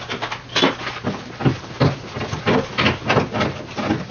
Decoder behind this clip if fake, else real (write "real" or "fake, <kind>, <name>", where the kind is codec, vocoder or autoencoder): real